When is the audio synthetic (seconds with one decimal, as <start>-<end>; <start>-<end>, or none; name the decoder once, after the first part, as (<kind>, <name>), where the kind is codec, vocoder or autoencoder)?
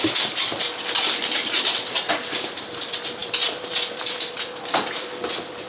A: none